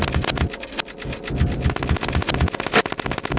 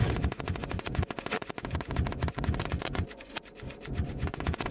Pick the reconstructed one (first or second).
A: second